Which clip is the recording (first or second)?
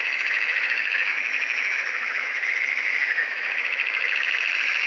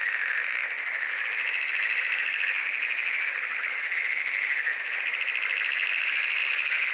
second